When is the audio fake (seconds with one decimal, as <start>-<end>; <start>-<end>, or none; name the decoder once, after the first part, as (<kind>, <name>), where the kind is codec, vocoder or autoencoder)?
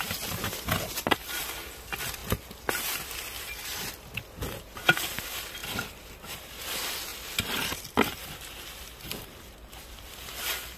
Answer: 5.6-6.6 (vocoder, BigVGAN v2); 7.1-7.8